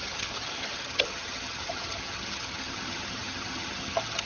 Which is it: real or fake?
fake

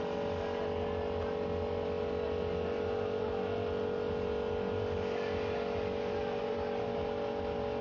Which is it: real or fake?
real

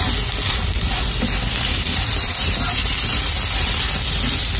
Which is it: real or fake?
fake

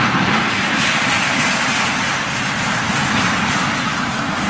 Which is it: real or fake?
real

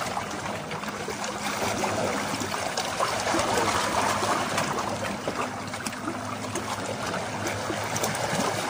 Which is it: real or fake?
real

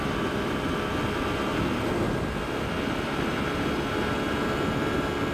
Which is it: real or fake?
real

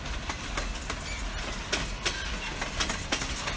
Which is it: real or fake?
real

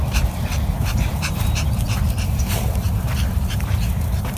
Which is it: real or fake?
fake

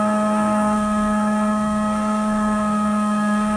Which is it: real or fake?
fake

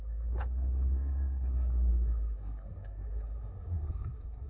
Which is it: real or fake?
fake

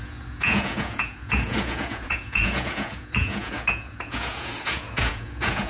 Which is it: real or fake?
fake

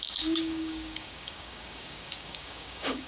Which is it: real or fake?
fake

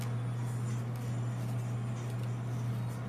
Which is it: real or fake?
real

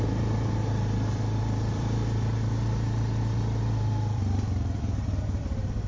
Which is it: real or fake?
fake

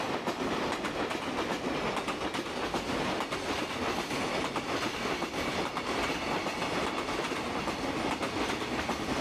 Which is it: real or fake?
real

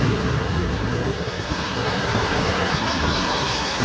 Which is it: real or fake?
fake